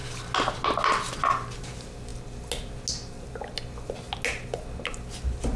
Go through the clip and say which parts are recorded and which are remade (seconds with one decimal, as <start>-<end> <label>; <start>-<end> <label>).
0.0-5.6 recorded

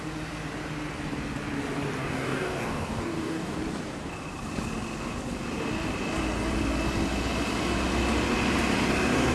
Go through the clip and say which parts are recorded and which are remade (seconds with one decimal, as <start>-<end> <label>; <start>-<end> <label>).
0.0-2.0 recorded; 2.0-3.6 remade; 3.6-9.3 recorded

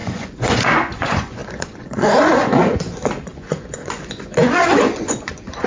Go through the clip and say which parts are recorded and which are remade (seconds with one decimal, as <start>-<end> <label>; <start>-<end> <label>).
0.0-5.7 remade

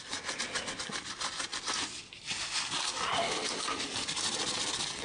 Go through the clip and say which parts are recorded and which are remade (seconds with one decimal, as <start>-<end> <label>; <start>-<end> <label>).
0.0-5.0 recorded